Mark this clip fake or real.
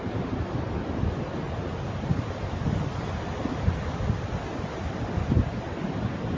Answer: real